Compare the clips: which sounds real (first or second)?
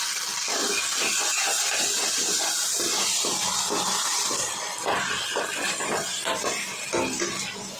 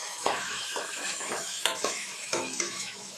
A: first